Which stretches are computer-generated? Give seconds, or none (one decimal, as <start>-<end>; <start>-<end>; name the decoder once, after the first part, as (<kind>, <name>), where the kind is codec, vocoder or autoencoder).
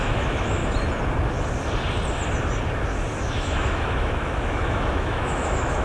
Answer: 0.0-0.6 (autoencoder, DAC-VAE); 3.3-5.8